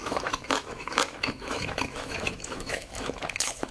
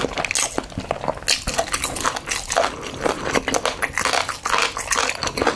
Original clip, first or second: second